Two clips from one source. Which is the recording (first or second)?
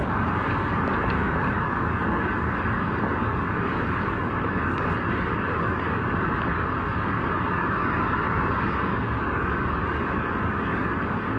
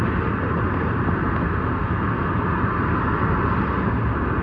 second